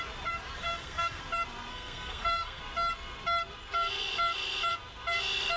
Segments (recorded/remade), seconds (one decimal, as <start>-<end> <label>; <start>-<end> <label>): 0.0-0.6 recorded; 0.6-1.2 remade; 1.2-1.7 recorded; 1.7-2.6 remade; 2.6-5.6 recorded